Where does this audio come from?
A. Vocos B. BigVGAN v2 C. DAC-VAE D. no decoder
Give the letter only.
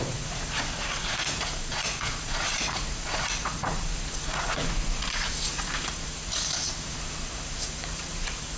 A